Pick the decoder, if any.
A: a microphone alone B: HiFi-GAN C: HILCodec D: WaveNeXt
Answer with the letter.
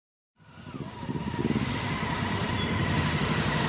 A